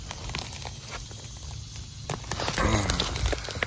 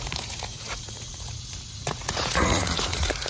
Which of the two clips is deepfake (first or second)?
second